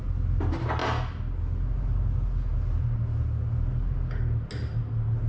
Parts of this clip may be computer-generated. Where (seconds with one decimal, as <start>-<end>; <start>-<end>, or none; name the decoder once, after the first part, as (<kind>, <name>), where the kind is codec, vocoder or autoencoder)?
none